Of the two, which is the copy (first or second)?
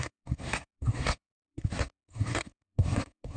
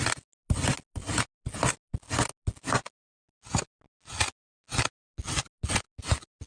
first